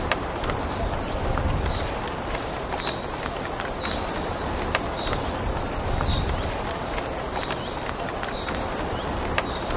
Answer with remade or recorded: recorded